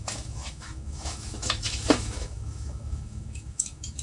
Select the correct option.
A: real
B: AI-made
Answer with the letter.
B